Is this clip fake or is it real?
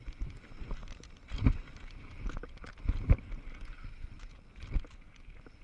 real